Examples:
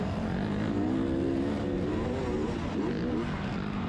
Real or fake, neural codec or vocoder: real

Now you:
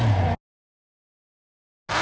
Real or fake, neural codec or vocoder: real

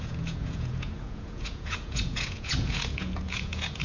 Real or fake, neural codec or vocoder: fake, vocoder, Vocos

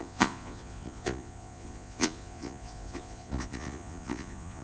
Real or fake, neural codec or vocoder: fake, vocoder, Vocos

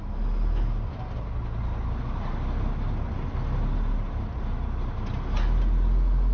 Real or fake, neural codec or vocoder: real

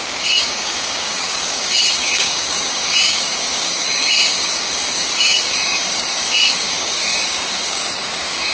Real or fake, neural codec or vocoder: fake, codec, DAC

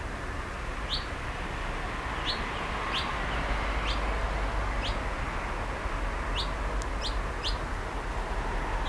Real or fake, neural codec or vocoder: real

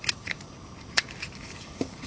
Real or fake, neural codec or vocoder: fake, vocoder, BigVGAN v2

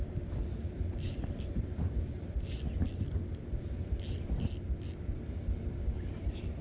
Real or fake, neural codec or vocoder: real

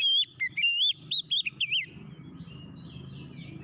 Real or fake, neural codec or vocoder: real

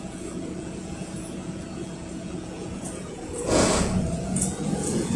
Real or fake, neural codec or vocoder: fake, vocoder, Vocos